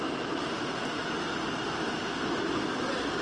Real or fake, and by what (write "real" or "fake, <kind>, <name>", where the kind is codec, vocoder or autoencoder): real